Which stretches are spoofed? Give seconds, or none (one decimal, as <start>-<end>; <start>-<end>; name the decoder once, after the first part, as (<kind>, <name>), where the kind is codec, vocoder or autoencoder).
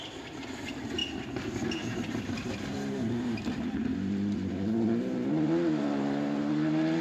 none